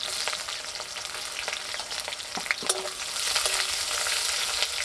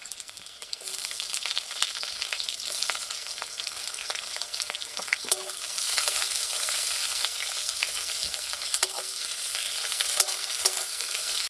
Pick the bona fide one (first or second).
first